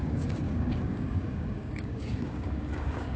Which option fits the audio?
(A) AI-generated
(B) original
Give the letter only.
A